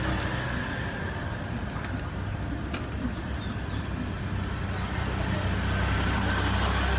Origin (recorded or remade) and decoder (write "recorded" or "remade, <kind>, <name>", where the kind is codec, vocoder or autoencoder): recorded